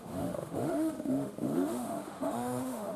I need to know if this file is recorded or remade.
remade